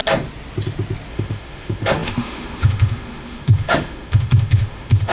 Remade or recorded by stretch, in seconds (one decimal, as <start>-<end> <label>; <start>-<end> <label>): 0.0-1.1 recorded; 1.1-5.1 remade